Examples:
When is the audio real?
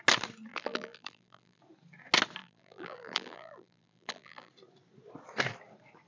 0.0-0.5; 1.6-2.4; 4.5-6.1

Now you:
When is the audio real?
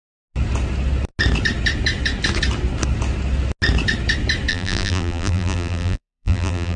0.0-4.5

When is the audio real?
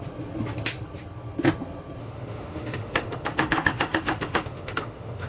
0.0-2.0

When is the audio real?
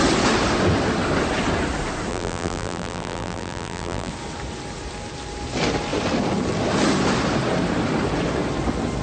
0.0-2.1; 4.1-9.0